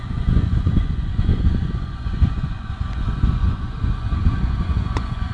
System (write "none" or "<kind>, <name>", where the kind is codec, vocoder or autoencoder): vocoder, Vocos